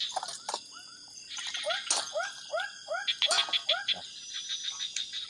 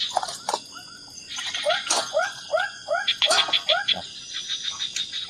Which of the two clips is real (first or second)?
first